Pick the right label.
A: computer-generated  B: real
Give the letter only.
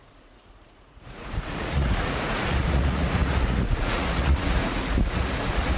A